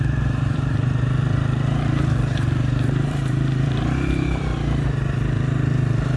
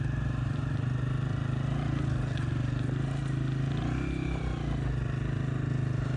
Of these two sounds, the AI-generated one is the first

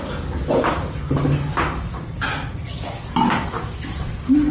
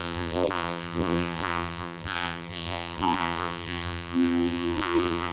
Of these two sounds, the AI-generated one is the second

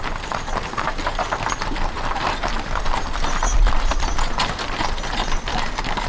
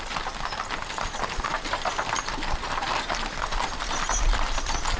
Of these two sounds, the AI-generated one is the second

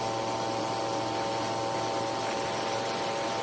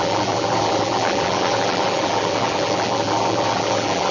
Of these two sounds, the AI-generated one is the second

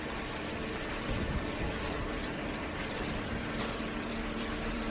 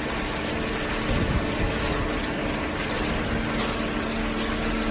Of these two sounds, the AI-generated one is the first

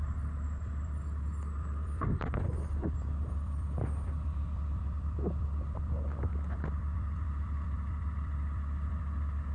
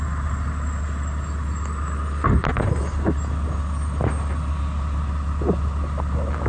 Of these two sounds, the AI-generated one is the first